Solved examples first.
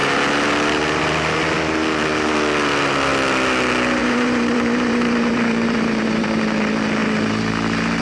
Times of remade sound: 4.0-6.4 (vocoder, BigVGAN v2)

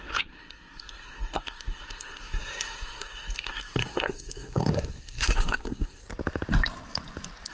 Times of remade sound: 0.0-6.0 (codec, SNAC)

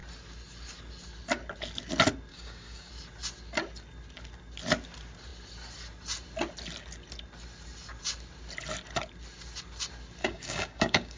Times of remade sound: 2.3-2.9 (codec, DAC); 10.2-11.2

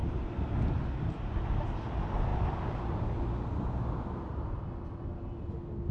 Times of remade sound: none